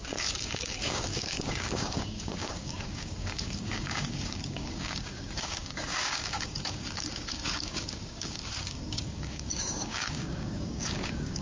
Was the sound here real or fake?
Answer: fake